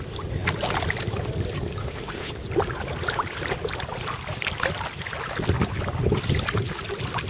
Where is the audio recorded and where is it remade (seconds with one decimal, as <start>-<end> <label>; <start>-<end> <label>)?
0.0-1.8 recorded; 1.8-2.3 remade; 2.3-7.3 recorded